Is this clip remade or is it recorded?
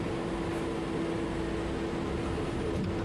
recorded